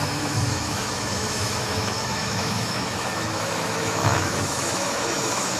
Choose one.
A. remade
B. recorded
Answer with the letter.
A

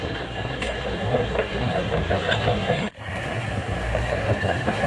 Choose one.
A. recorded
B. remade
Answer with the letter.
B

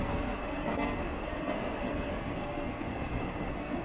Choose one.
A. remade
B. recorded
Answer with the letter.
A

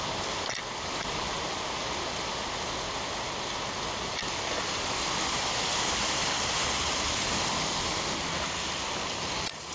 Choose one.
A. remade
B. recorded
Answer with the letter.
B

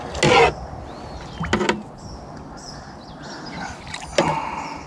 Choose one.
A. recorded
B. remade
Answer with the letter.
A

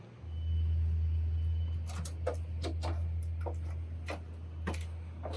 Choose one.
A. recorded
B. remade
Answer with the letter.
A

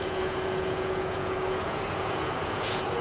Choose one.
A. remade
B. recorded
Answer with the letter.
A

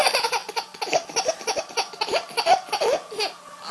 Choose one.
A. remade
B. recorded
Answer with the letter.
B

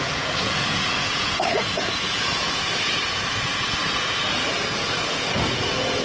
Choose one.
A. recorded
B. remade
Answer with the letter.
B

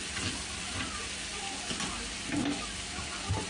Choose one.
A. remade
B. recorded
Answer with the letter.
B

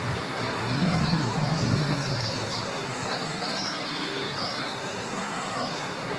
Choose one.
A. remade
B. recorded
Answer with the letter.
A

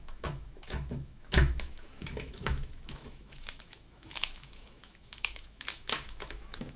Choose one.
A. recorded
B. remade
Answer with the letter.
B